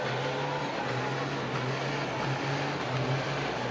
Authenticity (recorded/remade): recorded